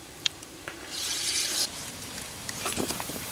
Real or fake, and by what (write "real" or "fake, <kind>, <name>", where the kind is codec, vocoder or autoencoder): fake, vocoder, BigVGAN v2